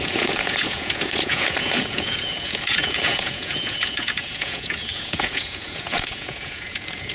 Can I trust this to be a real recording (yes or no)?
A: no